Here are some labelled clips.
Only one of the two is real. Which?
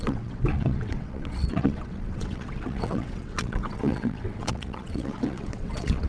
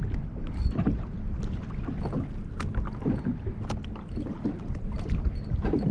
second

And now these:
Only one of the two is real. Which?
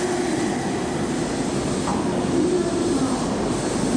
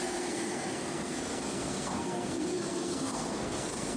first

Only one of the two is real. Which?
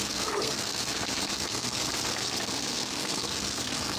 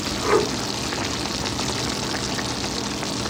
second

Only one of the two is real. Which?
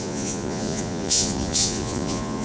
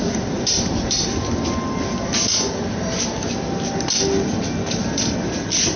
second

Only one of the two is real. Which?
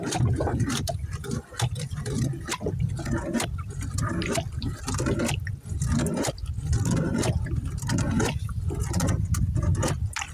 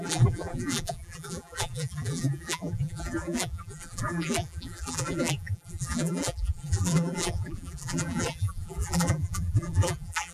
first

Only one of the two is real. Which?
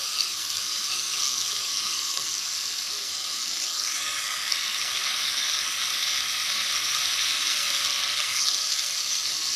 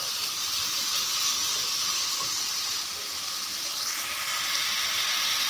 second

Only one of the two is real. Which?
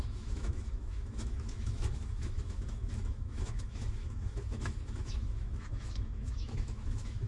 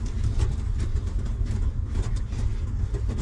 second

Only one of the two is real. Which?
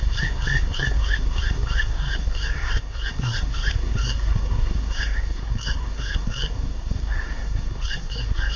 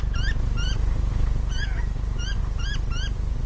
second